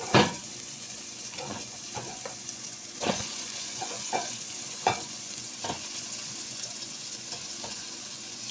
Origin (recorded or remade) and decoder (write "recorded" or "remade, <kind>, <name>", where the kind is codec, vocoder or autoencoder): remade, vocoder, Vocos